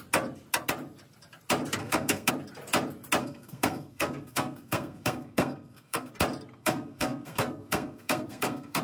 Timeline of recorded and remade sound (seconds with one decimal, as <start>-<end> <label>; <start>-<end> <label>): 0.0-1.8 recorded; 1.8-2.3 remade; 2.3-3.2 recorded; 3.2-6.1 remade; 6.1-6.6 recorded; 6.6-8.8 remade